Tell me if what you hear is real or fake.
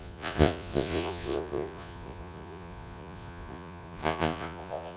fake